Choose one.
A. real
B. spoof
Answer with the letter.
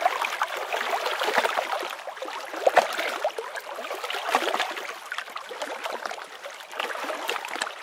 A